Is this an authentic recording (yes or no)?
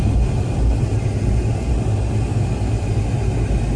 yes